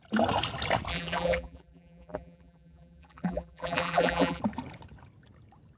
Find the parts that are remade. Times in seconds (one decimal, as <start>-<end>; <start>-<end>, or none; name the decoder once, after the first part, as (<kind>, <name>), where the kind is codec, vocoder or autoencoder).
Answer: 0.9-4.4 (vocoder, BigVGAN v2)